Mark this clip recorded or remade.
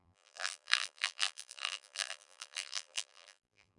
remade